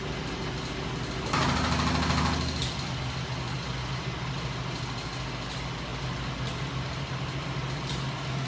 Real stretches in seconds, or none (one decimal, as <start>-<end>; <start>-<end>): 0.0-8.5